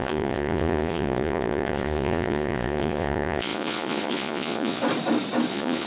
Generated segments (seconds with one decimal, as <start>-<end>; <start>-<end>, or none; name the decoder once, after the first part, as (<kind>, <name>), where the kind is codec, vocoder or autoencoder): 0.0-4.8 (vocoder, Vocos); 5.5-5.9